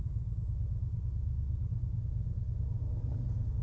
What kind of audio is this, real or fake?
real